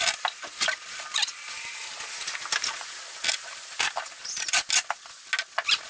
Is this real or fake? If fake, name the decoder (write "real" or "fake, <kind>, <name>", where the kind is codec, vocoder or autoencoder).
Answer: real